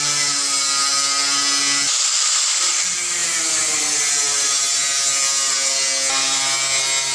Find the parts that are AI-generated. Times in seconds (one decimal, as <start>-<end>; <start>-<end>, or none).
none